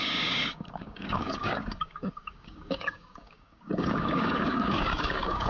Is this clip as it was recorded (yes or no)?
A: no